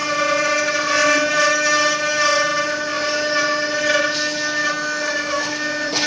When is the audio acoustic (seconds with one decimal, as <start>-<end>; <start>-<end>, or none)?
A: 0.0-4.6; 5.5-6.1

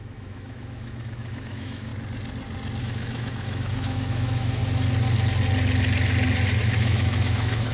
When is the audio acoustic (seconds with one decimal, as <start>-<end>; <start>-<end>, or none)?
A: 1.9-2.8; 4.6-6.6

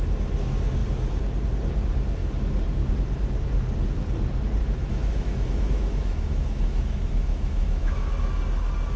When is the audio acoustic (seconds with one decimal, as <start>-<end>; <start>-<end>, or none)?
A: 0.0-4.6; 8.1-9.0

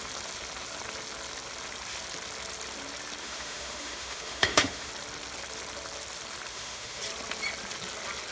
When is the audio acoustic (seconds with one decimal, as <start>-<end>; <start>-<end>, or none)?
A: 0.0-3.2; 4.9-6.5; 7.0-8.3

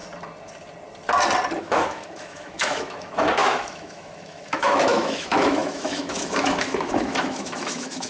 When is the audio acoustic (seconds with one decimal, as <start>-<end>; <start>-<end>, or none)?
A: 0.0-1.6

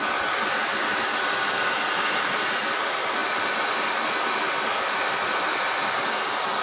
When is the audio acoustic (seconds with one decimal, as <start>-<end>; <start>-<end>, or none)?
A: 0.0-6.6